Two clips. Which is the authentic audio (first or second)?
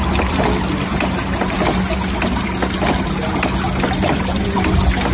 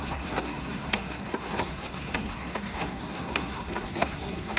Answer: first